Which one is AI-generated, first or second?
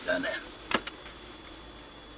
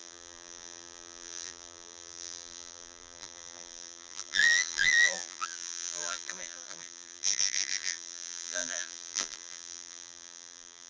second